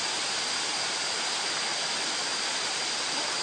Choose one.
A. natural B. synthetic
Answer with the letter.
A